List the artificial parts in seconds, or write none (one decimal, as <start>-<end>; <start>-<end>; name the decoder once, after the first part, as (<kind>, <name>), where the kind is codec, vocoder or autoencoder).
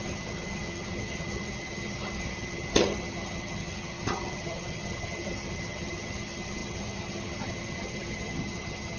0.0-9.0 (vocoder, HiFi-GAN)